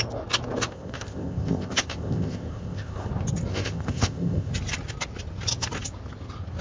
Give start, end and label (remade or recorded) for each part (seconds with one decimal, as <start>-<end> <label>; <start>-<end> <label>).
0.0-0.7 recorded; 0.7-3.1 remade; 3.1-3.5 recorded; 3.5-4.5 remade; 4.5-6.6 recorded